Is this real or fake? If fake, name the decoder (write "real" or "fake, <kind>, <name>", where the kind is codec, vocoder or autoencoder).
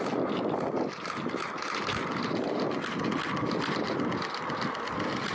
real